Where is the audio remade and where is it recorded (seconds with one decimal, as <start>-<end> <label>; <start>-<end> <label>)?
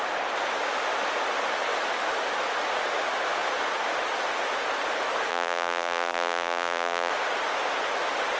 0.0-5.3 recorded; 5.3-7.1 remade; 7.1-8.4 recorded